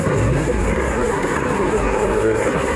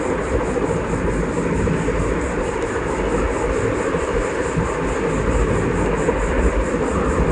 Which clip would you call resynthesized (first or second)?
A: first